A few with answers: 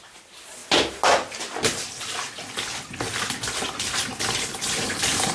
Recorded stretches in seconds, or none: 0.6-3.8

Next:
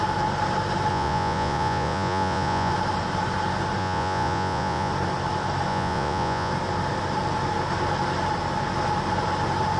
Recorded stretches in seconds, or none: 0.0-0.9; 2.7-3.8; 4.9-5.7; 6.5-9.8

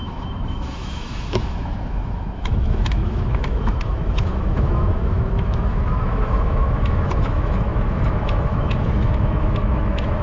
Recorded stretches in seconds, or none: none

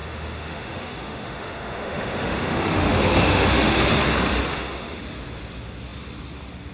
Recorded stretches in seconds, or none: 4.0-4.5; 5.0-6.7